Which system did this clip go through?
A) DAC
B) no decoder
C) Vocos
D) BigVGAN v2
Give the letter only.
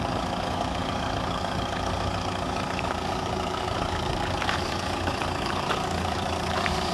A